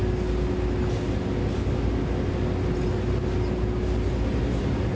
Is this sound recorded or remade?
recorded